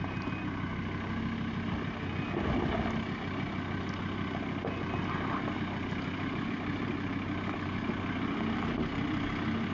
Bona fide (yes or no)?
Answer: yes